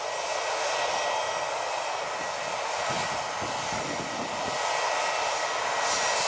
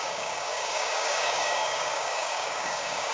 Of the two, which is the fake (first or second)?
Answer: second